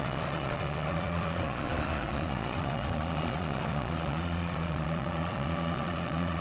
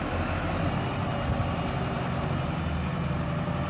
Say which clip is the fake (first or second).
first